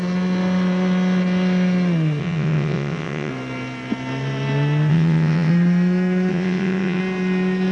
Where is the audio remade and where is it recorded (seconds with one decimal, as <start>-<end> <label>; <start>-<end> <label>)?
0.0-2.2 recorded; 2.2-3.3 remade; 3.3-4.9 recorded; 4.9-5.5 remade; 5.5-6.3 recorded; 6.3-7.0 remade; 7.0-7.7 recorded